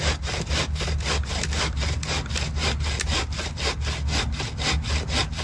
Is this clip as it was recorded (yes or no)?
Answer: yes